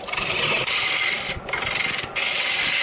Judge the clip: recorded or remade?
recorded